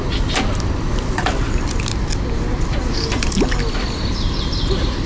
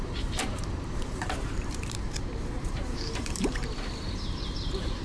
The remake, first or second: second